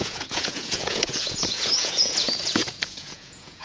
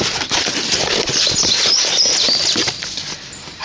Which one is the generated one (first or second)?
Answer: first